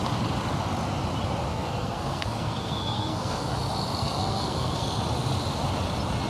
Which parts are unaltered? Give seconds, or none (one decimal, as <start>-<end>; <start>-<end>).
0.0-1.5; 3.5-4.0; 5.0-6.3